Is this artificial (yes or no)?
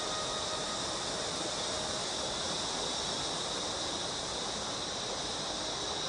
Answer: no